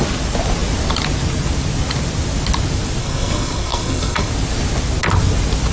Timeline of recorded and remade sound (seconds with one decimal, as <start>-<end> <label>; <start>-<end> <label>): 0.0-3.0 recorded; 3.0-4.3 remade; 4.3-5.7 recorded